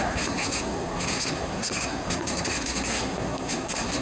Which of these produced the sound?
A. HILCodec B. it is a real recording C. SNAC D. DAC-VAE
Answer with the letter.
C